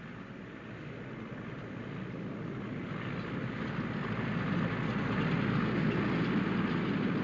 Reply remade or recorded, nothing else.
recorded